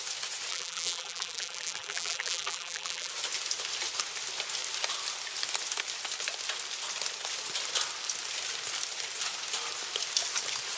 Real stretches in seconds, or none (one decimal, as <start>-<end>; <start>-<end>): 0.0-0.5; 3.1-10.8